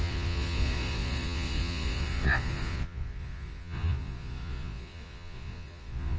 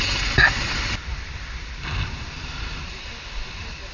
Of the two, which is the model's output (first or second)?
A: first